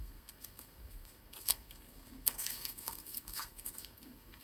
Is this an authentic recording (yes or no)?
no